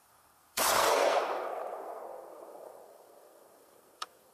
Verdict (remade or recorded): remade